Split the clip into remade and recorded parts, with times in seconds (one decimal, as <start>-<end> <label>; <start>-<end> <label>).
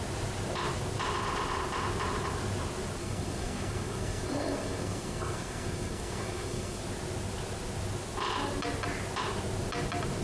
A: 0.0-3.0 recorded; 3.0-6.8 remade; 6.8-10.2 recorded